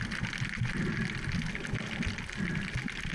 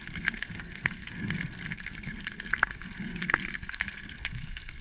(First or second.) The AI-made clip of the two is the second